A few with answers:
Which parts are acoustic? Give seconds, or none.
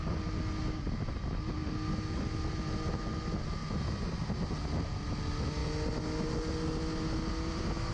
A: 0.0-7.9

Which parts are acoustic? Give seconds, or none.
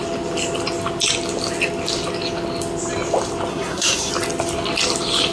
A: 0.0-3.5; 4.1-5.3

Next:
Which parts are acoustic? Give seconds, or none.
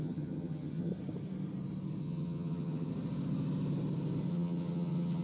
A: 0.9-2.0; 2.9-4.3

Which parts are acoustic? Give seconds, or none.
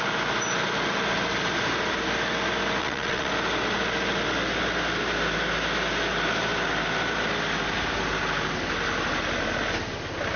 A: 0.0-2.8; 3.3-10.4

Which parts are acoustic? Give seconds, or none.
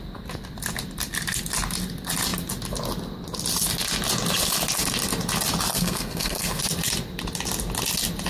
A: 0.0-5.7; 6.6-8.3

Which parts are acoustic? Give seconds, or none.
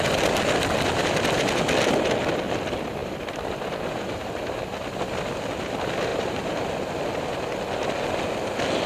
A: 0.0-3.0; 4.3-6.1; 6.7-8.9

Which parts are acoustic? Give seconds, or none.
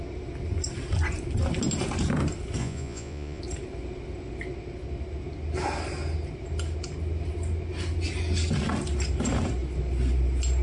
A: 0.0-2.6; 3.4-10.6